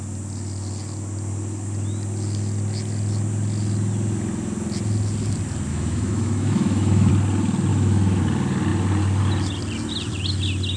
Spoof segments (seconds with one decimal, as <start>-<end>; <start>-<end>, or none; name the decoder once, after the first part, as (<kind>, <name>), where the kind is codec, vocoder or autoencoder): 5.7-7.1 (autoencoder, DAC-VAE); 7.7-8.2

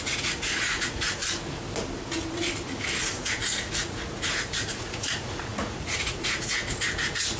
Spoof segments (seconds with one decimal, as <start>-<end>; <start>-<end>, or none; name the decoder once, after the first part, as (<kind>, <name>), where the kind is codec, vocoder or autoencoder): 0.0-1.2 (vocoder, Vocos); 3.0-7.4

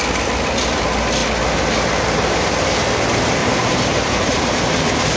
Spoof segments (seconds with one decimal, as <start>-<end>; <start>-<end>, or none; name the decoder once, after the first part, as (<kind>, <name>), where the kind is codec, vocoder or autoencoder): 3.4-5.2 (vocoder, BigVGAN v2)